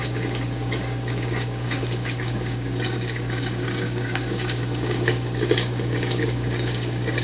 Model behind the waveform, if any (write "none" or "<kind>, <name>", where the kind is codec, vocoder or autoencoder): codec, DAC